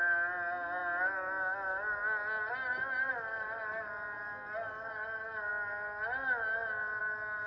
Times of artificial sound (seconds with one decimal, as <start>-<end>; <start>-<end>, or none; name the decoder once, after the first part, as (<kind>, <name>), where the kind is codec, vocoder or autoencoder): none